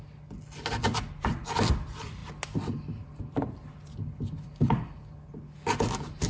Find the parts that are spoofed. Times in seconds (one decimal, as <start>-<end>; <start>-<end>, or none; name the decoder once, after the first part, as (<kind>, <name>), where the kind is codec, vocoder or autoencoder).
none